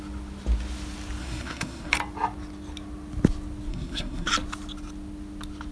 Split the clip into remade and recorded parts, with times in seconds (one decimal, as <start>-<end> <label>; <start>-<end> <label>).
0.0-1.2 recorded; 1.2-1.9 remade; 1.9-3.7 recorded; 3.7-4.3 remade; 4.3-5.7 recorded